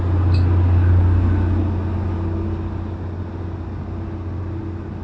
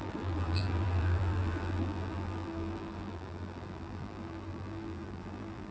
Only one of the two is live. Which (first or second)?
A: first